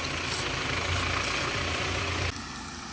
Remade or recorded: recorded